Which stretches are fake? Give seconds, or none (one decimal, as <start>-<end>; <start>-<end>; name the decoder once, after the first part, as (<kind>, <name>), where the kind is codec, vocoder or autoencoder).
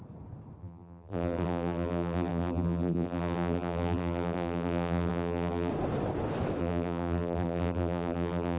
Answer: 0.6-5.7 (vocoder, BigVGAN v2); 6.6-8.6